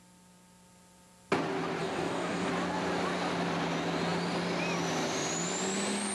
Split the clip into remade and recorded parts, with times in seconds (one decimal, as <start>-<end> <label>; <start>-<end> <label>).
0.0-1.8 recorded; 1.8-2.5 remade; 2.5-6.1 recorded